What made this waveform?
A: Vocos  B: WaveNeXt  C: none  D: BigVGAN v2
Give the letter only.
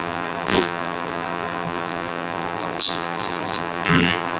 D